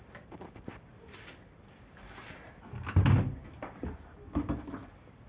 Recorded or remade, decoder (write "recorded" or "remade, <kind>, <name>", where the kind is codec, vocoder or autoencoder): recorded